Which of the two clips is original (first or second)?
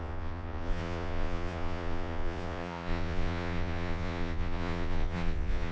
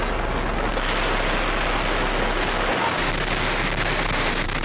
second